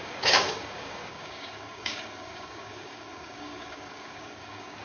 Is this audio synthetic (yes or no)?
yes